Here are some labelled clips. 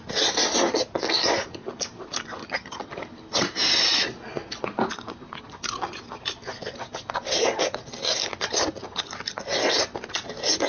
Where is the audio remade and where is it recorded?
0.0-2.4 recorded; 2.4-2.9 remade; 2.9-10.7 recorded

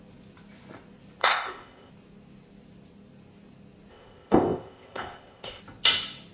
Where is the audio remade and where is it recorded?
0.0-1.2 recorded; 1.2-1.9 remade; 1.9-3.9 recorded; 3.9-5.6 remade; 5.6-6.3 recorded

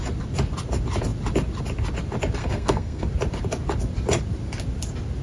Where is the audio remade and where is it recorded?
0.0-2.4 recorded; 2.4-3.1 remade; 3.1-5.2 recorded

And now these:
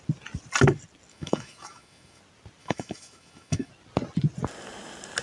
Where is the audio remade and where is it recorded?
0.0-1.1 recorded; 1.1-2.2 remade; 2.2-2.6 recorded; 2.6-3.7 remade; 3.7-5.2 recorded

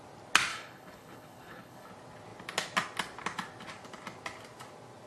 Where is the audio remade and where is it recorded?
0.0-0.5 recorded; 0.5-1.9 remade; 1.9-5.1 recorded

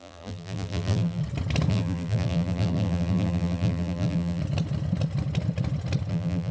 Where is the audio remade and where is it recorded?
0.0-1.2 remade; 1.2-1.7 recorded; 1.7-4.4 remade; 4.4-6.1 recorded; 6.1-6.5 remade